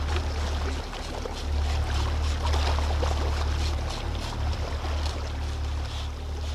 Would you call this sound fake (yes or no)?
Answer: no